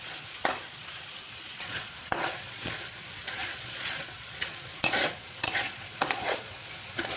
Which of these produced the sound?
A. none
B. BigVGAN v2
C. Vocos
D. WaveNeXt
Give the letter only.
C